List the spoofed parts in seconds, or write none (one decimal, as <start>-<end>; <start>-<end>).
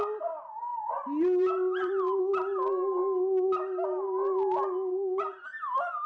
0.7-2.2; 4.9-5.5